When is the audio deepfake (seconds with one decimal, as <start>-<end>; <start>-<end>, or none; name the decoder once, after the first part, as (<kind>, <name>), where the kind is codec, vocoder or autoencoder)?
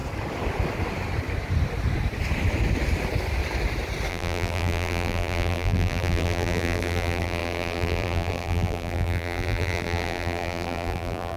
4.1-11.4 (vocoder, BigVGAN v2)